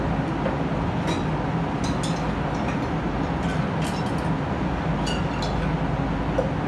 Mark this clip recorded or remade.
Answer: recorded